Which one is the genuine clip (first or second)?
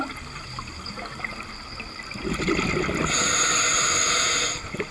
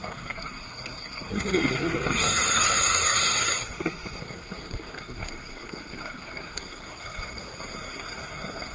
first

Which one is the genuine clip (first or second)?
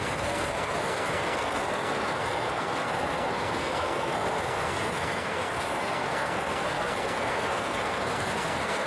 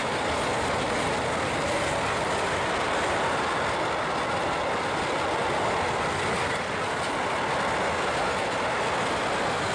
second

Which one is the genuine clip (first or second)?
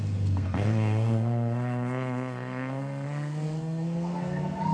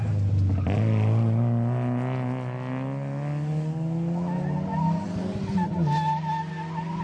second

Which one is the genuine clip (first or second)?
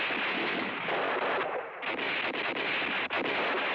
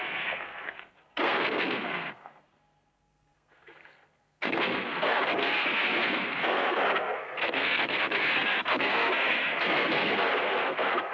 first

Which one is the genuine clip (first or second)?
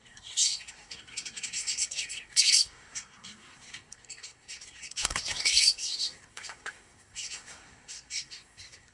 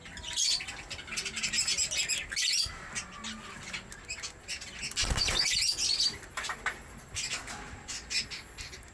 second